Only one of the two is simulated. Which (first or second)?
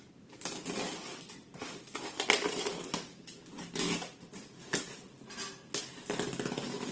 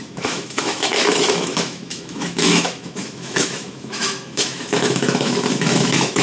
second